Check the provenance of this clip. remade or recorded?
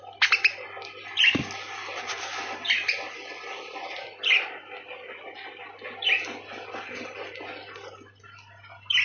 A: recorded